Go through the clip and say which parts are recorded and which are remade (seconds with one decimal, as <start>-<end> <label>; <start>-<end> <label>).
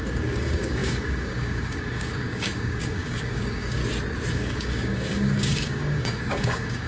0.0-3.8 remade; 3.8-4.3 recorded; 4.3-6.9 remade